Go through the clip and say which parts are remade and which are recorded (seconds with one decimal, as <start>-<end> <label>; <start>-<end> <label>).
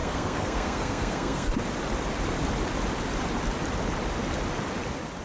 0.0-1.5 remade; 1.5-5.2 recorded